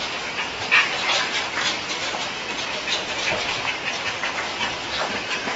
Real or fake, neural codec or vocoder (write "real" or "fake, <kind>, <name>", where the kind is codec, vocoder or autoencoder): real